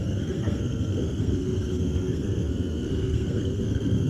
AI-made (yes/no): yes